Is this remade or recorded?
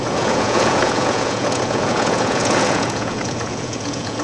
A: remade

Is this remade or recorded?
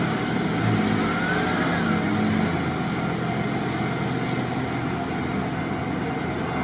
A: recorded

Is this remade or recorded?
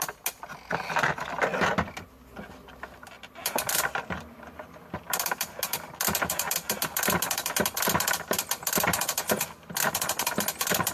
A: recorded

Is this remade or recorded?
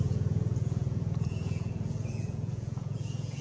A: remade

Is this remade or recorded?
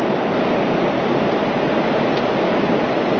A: recorded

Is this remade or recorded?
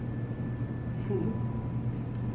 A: recorded